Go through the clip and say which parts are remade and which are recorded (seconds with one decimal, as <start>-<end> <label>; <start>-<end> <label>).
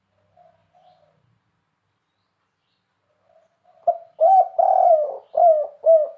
0.0-6.2 recorded